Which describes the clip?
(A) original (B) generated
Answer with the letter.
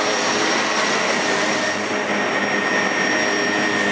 A